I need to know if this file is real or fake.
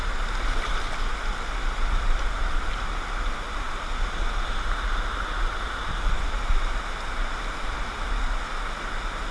real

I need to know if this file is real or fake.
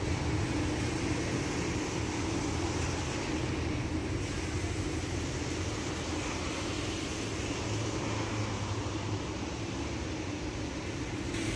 real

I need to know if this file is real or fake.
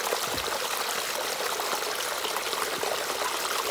real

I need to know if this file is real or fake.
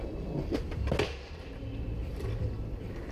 real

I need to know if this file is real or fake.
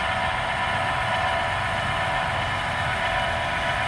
real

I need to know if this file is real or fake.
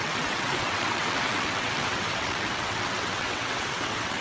fake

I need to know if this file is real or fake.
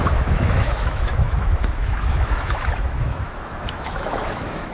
fake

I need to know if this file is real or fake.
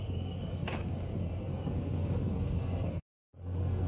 fake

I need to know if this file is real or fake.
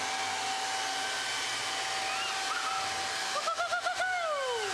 real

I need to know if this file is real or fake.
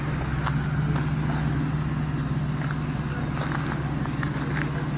real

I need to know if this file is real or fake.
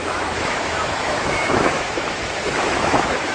fake